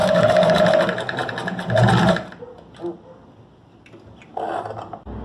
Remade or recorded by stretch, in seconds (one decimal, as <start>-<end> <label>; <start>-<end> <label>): 0.0-0.6 remade; 0.6-5.2 recorded